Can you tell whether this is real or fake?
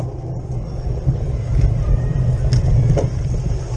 real